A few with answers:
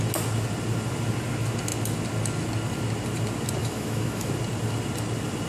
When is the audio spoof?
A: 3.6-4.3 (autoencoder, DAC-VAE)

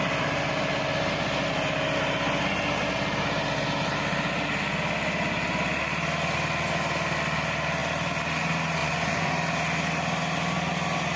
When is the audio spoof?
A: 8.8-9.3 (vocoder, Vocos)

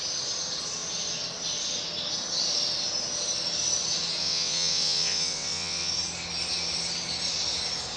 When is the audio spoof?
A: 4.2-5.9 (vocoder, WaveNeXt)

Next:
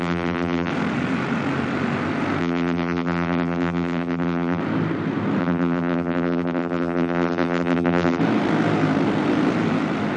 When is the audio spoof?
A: 0.0-0.7 (vocoder, BigVGAN v2); 2.4-4.6; 5.4-8.2